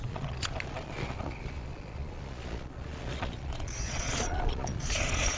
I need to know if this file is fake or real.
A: fake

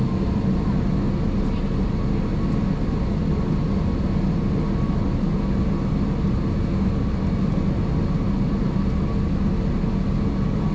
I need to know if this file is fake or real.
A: real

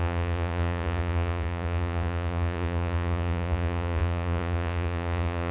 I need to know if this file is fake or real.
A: fake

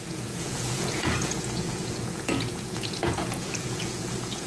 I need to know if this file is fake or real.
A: fake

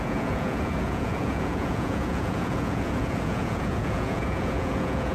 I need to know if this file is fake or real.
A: fake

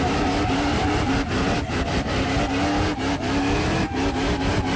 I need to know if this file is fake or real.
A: real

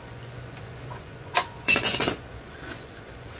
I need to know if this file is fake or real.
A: fake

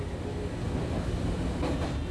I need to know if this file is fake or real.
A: real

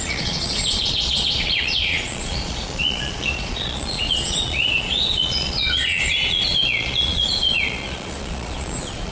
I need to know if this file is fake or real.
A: fake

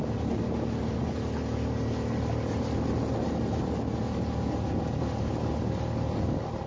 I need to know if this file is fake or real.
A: real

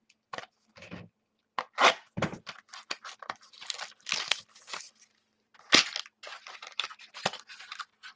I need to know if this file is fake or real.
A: real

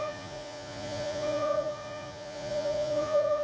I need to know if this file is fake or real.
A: fake